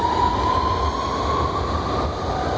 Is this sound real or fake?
real